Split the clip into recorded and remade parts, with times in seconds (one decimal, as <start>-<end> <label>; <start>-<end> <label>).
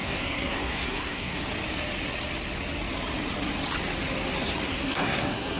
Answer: 0.0-1.4 remade; 1.4-4.7 recorded; 4.7-5.6 remade